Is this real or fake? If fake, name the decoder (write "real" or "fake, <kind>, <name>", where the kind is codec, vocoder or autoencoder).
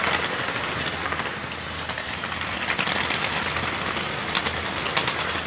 real